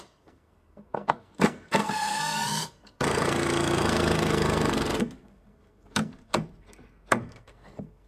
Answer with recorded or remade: remade